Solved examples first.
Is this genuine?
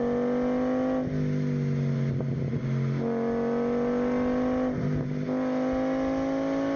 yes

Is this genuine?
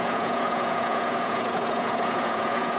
no